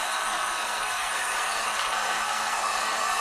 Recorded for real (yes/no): no